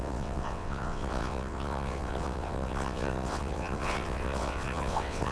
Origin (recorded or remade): remade